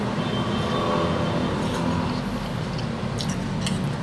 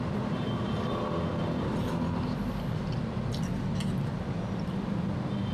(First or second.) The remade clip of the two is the second